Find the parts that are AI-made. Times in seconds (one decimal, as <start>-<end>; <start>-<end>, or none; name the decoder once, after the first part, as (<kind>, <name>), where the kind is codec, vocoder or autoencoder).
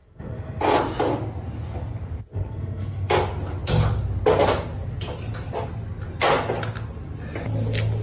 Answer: 0.0-0.6 (codec, SNAC); 2.3-3.1